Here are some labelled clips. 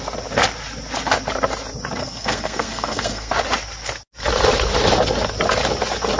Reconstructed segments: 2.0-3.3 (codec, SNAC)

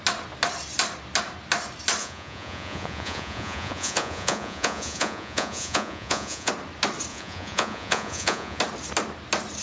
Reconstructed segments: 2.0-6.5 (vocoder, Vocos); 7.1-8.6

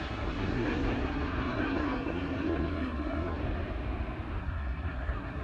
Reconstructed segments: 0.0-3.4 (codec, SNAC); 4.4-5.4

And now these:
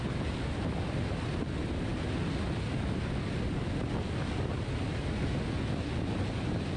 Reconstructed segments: 4.9-5.4 (vocoder, BigVGAN v2)

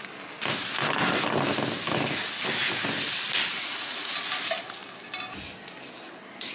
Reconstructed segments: 3.5-4.1 (vocoder, Vocos)